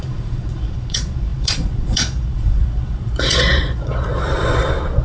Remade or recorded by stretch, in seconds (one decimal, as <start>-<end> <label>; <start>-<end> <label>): 0.0-5.0 remade